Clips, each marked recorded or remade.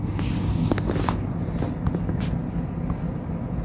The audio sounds recorded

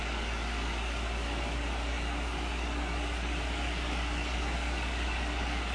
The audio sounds remade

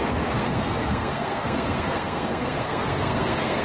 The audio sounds remade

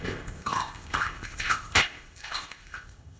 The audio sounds remade